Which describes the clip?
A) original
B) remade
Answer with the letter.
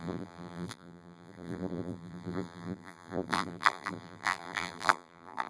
B